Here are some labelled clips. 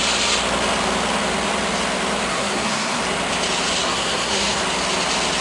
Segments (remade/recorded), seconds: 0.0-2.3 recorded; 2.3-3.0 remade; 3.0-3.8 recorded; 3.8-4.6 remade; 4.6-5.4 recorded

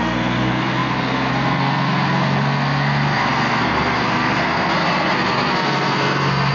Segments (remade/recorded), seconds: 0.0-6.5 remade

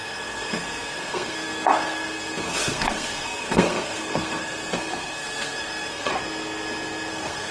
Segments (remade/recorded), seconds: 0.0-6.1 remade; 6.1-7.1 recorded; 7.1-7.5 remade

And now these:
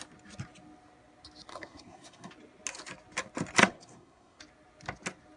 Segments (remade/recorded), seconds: 0.0-1.5 recorded; 1.5-2.3 remade; 2.3-3.6 recorded; 3.6-4.4 remade; 4.4-5.4 recorded